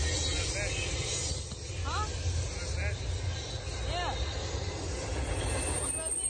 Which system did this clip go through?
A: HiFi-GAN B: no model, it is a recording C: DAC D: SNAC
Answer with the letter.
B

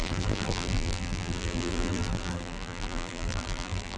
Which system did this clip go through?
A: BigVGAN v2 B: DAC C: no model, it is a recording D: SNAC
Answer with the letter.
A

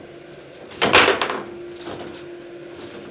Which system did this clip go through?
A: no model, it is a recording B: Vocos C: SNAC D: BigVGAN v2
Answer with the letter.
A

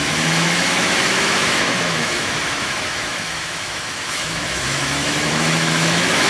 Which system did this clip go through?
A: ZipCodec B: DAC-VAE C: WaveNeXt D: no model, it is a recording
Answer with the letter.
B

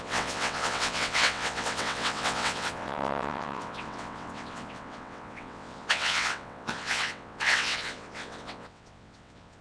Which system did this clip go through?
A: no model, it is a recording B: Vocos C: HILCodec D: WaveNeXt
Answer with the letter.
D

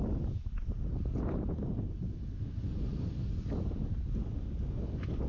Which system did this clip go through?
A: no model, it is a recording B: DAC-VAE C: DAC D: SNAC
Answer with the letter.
A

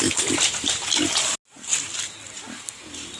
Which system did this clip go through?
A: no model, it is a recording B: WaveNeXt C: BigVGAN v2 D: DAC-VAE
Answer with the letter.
A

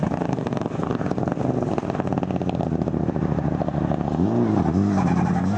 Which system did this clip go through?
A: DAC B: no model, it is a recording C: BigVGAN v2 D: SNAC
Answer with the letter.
B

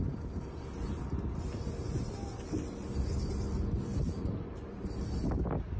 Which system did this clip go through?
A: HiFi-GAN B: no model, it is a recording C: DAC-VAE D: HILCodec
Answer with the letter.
B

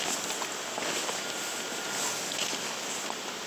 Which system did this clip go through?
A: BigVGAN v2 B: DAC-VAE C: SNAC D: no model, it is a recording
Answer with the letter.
D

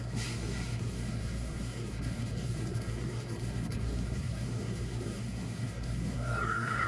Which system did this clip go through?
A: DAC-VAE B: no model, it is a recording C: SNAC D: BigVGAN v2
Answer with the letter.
C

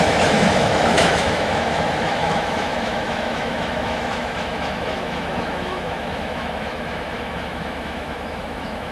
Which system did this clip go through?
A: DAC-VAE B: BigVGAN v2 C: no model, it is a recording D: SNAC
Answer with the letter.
A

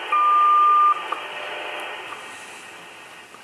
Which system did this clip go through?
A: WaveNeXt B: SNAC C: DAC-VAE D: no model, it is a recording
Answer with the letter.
D